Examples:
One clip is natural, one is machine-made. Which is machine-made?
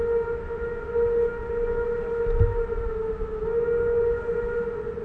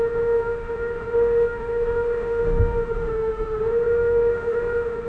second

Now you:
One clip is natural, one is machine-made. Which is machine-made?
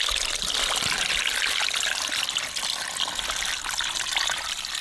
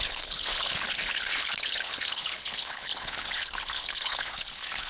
second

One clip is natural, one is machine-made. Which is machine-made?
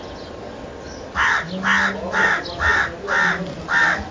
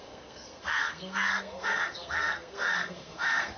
second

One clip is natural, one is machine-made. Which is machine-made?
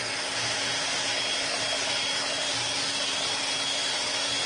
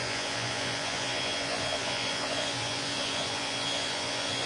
second